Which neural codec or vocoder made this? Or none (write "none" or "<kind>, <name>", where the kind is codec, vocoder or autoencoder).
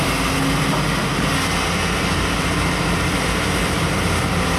none